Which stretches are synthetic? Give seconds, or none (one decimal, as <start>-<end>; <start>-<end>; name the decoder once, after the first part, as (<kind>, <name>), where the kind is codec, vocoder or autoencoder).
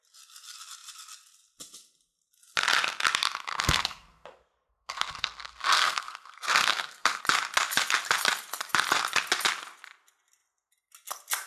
3.5-7.2 (codec, SNAC)